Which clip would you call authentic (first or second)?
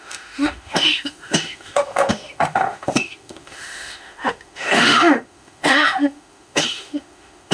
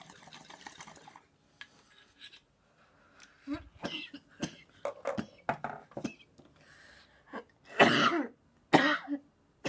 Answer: second